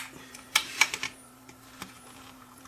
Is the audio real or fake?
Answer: fake